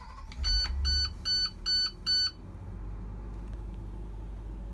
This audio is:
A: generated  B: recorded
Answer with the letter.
B